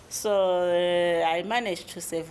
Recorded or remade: recorded